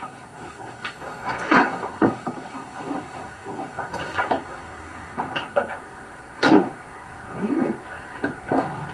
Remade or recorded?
remade